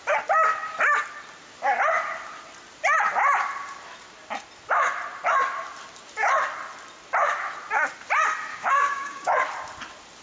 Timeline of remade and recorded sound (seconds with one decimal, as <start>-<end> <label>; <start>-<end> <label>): 0.0-8.5 recorded; 8.5-9.3 remade; 9.3-10.2 recorded